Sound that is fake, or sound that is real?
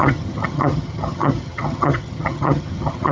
fake